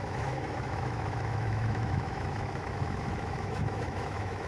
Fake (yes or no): yes